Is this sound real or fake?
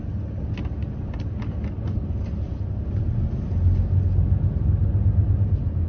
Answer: real